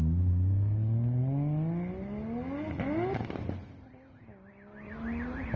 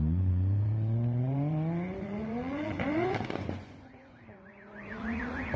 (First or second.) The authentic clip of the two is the first